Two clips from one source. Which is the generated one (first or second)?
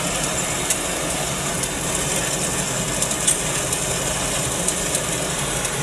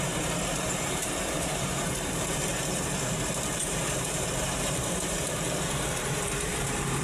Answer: second